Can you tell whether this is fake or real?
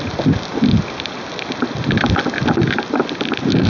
real